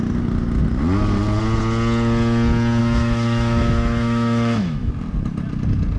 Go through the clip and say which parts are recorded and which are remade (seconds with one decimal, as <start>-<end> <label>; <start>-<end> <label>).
0.0-2.8 recorded; 2.8-4.9 remade; 4.9-6.0 recorded